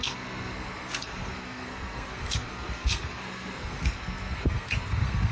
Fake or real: fake